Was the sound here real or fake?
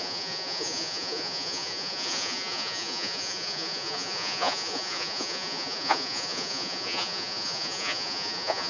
fake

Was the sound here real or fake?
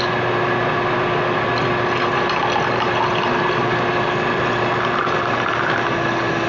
real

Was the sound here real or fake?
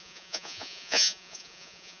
fake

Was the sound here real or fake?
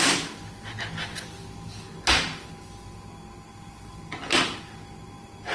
real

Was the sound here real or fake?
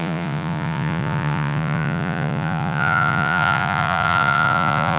fake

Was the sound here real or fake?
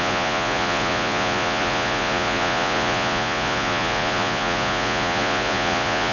fake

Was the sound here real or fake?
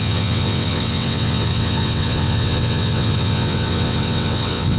fake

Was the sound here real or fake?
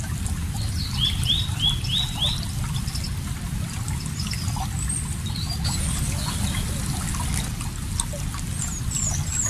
real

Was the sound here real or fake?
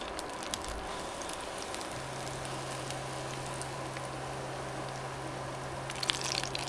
real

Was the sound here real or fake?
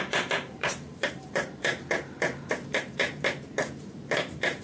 fake